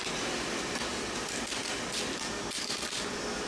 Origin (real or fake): real